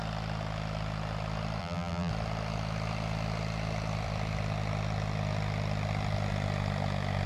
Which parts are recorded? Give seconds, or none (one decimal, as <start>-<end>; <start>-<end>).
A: 0.0-1.6; 2.1-7.3